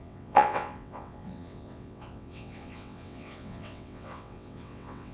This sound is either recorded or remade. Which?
remade